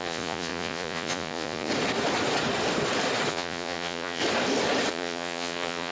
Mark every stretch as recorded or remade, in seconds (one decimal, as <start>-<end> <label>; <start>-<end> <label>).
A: 0.0-1.7 remade; 1.7-3.3 recorded; 3.3-4.2 remade; 4.2-4.9 recorded; 4.9-5.9 remade